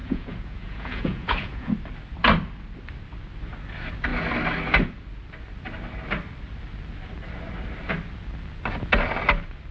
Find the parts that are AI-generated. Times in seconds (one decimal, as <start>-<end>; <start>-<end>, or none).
0.0-1.7